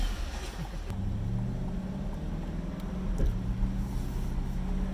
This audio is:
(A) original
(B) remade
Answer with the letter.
A